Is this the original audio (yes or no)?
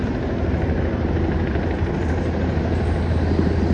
yes